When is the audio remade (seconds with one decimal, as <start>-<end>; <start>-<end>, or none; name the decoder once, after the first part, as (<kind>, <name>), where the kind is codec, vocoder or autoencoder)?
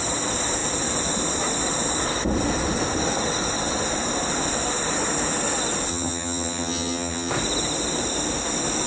5.9-7.3 (vocoder, HiFi-GAN)